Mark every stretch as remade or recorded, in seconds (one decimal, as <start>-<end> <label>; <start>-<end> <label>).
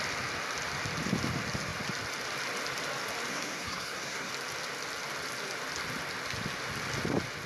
0.0-3.3 recorded; 3.3-4.3 remade; 4.3-7.5 recorded